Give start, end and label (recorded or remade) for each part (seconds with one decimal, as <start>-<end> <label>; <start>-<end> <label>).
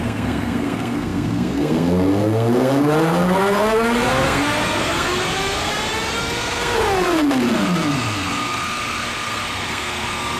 0.0-5.7 remade; 5.7-6.2 recorded; 6.2-10.4 remade